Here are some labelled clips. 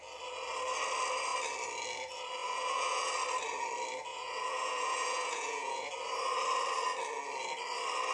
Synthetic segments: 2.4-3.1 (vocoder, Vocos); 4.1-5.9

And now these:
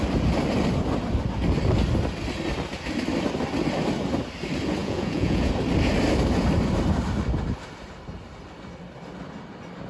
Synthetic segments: 4.8-5.5 (vocoder, Vocos)

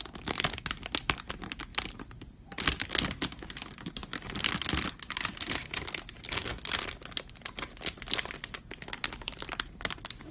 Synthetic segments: none

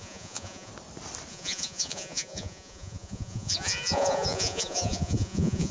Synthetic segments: 0.0-0.7 (vocoder, Vocos); 1.3-5.7

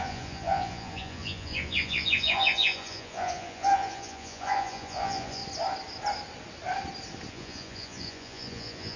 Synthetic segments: 0.0-5.4 (vocoder, Vocos); 7.3-9.0

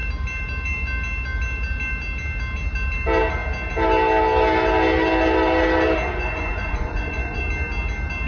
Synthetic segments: 6.1-7.4 (vocoder, Vocos)